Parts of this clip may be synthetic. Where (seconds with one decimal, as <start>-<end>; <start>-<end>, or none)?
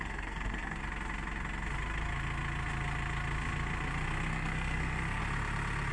0.0-0.8; 4.3-5.2